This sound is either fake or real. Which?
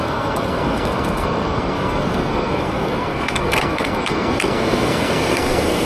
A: fake